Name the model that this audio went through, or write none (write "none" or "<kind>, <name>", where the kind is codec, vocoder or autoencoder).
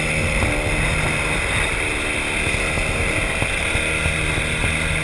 none